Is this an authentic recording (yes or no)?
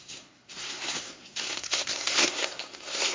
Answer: no